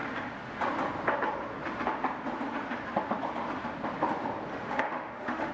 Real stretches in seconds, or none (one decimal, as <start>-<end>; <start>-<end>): 0.0-4.5